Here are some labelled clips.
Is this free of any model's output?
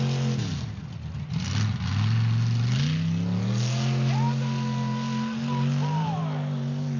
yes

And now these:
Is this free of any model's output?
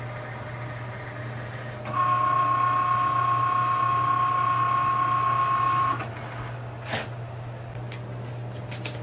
yes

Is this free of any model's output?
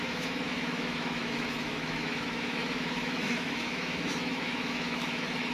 no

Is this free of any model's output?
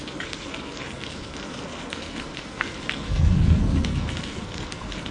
no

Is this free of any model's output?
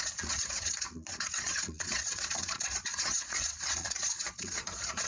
no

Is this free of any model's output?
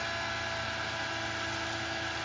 yes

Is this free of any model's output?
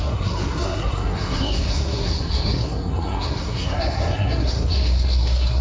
no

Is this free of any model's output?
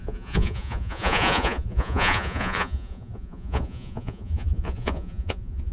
no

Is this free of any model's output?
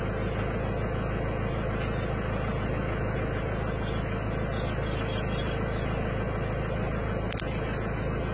yes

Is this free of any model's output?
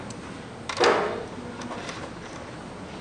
yes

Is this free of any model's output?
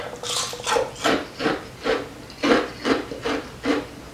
yes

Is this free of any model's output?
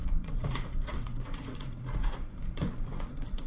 no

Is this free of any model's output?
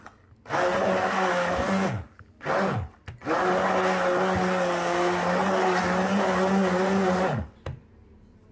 yes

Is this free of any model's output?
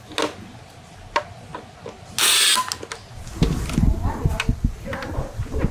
yes